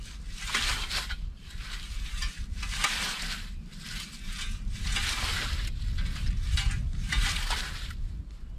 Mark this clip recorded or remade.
recorded